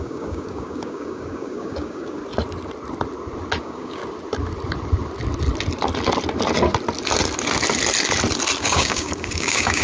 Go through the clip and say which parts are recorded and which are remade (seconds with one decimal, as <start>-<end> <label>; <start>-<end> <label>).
0.0-2.2 remade; 2.2-3.6 recorded; 3.6-4.0 remade; 4.0-8.6 recorded; 8.6-9.8 remade